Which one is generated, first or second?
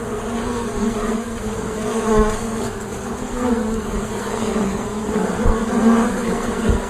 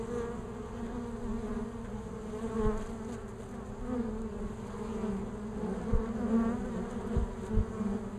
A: first